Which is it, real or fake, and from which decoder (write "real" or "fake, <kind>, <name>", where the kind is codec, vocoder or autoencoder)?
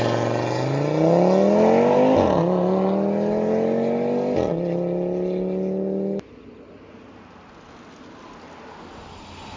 real